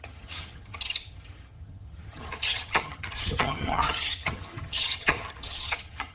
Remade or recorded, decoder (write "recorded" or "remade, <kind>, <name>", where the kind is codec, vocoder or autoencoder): remade, vocoder, HiFi-GAN